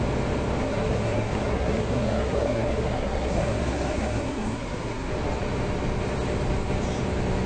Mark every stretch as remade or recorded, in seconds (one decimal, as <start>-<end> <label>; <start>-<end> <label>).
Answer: 0.0-0.6 recorded; 0.6-5.1 remade; 5.1-7.5 recorded